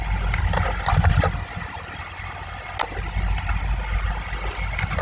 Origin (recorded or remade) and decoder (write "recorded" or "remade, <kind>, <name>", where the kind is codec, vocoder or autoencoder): recorded